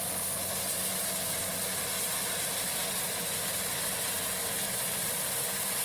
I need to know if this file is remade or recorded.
recorded